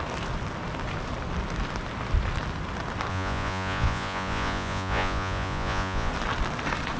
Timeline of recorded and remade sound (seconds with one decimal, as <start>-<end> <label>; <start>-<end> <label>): 0.0-3.1 recorded; 3.1-6.1 remade; 6.1-7.0 recorded